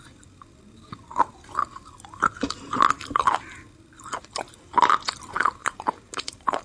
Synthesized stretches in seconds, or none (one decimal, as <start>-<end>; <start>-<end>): 5.6-6.6